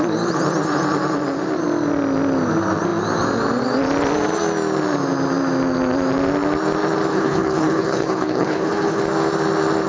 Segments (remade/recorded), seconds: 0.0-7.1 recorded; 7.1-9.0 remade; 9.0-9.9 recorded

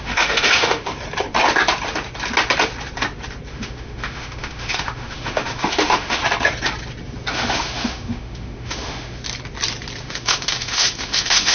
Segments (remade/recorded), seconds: 0.0-0.9 remade; 0.9-3.5 recorded; 3.5-6.2 remade; 6.2-7.3 recorded; 7.3-9.2 remade; 9.2-10.0 recorded; 10.0-11.5 remade

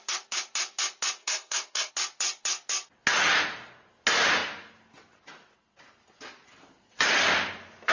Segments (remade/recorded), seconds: 0.0-1.2 recorded; 1.2-1.9 remade; 1.9-7.9 recorded

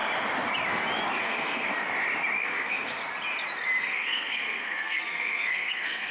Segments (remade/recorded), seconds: 0.0-1.2 recorded; 1.2-1.7 remade; 1.7-2.4 recorded; 2.4-3.0 remade; 3.0-3.8 recorded; 3.8-6.1 remade